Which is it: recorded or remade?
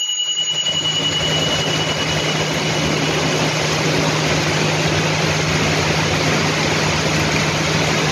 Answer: recorded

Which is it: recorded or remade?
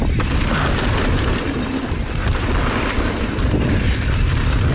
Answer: recorded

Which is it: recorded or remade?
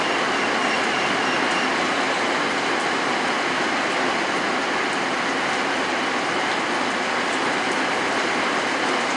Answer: recorded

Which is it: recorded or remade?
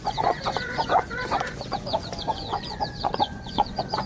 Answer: remade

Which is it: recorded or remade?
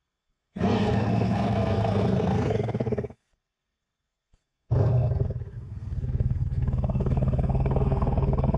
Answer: remade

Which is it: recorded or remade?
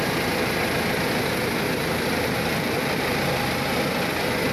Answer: recorded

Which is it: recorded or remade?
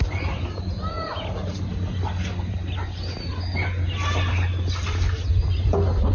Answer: recorded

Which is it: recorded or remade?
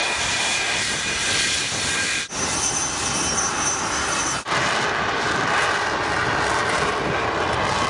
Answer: remade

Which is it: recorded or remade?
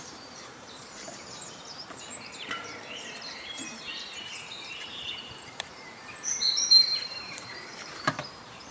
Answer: remade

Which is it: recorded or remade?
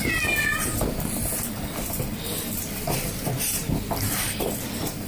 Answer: recorded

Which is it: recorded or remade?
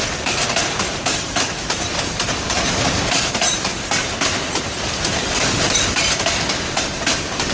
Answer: remade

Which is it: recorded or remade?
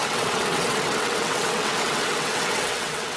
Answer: remade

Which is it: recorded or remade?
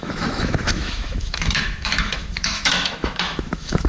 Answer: remade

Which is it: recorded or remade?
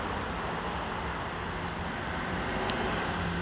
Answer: recorded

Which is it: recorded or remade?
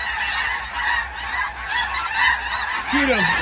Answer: recorded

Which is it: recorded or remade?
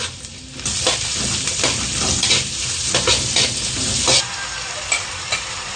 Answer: recorded